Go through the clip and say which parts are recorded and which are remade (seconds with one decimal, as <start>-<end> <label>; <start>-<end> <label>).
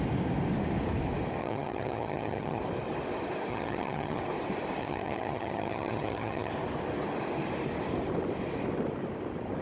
0.0-1.4 recorded; 1.4-2.6 remade; 2.6-3.5 recorded; 3.5-4.2 remade; 4.2-4.8 recorded; 4.8-6.5 remade; 6.5-9.6 recorded